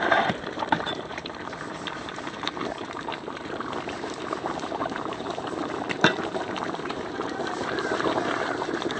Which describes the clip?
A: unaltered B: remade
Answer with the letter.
B